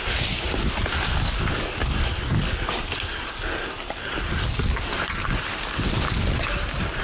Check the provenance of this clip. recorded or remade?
recorded